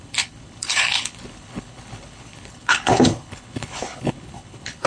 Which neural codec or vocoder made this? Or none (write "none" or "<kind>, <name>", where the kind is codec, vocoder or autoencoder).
codec, HILCodec